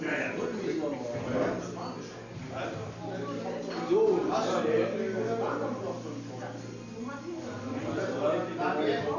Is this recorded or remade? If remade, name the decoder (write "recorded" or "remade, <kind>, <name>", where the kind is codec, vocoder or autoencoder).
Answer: recorded